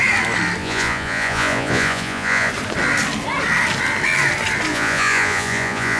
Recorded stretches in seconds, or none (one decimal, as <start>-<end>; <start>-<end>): 0.0-0.6; 2.5-4.7